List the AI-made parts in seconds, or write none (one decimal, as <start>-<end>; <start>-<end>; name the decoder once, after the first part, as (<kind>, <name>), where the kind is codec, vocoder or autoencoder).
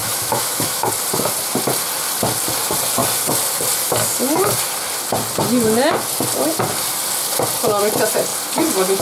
0.0-0.9 (autoencoder, DAC-VAE)